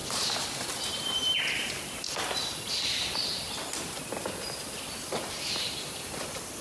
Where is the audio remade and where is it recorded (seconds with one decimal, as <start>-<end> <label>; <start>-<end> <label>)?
0.0-0.8 recorded; 0.8-6.6 remade